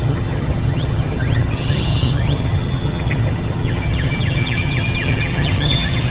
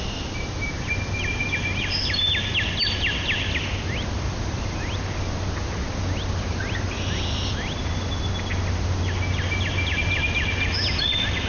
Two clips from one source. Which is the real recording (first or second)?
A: second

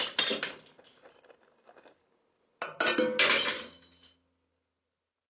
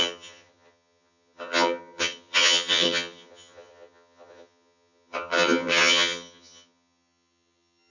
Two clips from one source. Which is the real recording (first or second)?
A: first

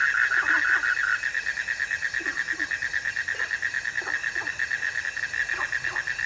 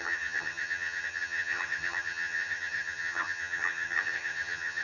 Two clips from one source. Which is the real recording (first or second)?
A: first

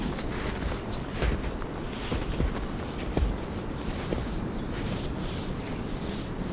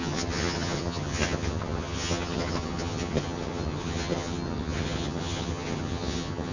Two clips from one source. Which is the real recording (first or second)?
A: first